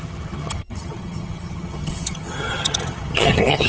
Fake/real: fake